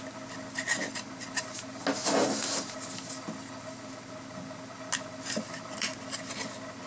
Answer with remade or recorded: recorded